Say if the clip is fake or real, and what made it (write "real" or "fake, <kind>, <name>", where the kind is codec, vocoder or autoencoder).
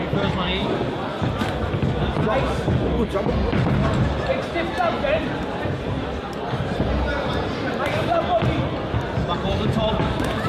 real